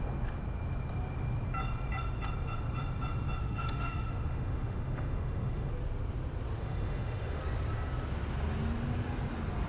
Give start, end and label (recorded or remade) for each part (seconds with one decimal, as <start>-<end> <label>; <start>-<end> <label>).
0.0-3.4 recorded; 3.4-5.7 remade; 5.7-6.6 recorded; 6.6-7.4 remade; 7.4-9.7 recorded